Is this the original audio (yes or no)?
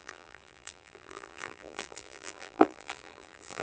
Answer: no